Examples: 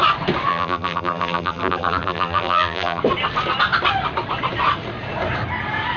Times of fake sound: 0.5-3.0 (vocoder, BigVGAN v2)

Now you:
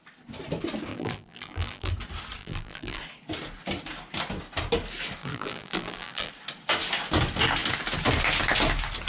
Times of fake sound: 0.9-1.9 (vocoder, BigVGAN v2); 2.4-3.0; 5.2-6.3